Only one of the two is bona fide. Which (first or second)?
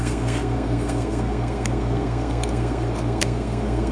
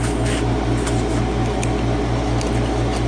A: second